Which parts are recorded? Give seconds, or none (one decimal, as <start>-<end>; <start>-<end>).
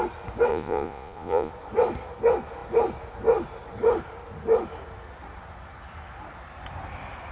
0.0-0.5; 1.5-7.3